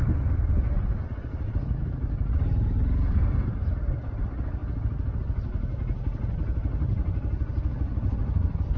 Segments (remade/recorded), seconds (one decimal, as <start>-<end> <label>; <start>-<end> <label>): 0.0-1.3 recorded; 1.3-2.3 remade; 2.3-8.8 recorded